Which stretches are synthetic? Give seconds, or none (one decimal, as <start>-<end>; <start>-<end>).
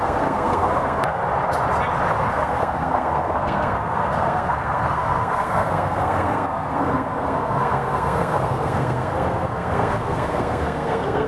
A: 0.0-1.2; 2.3-11.3